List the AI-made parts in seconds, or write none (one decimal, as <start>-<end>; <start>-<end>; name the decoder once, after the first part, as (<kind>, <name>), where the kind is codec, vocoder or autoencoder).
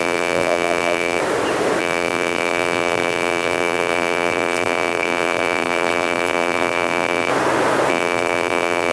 0.0-1.2 (vocoder, BigVGAN v2); 1.8-7.3; 7.9-8.9